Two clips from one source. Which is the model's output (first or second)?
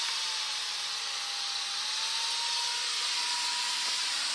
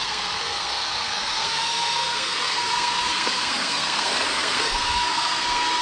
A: second